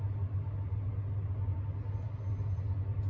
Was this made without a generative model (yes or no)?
yes